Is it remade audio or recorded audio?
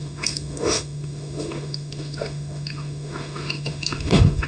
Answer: remade